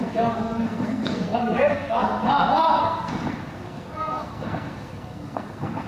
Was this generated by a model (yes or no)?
yes